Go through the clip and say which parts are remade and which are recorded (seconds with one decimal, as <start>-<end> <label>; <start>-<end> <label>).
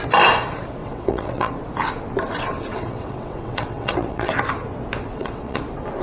0.0-0.8 recorded; 0.8-1.5 remade; 1.5-2.7 recorded; 2.7-4.3 remade; 4.3-5.1 recorded; 5.1-5.6 remade; 5.6-6.0 recorded